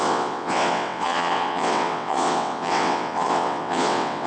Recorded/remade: remade